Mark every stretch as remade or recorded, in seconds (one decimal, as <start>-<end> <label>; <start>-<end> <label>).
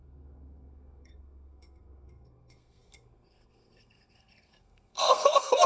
0.0-5.7 remade